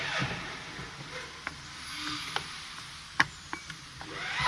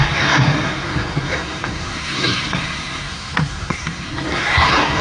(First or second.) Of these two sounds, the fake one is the second